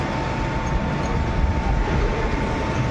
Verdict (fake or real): real